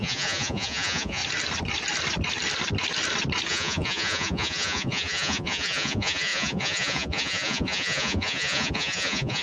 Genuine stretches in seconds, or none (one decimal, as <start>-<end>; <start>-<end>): 1.2-3.5